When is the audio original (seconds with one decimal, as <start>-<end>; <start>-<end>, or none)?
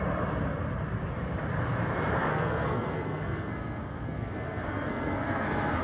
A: 0.0-2.3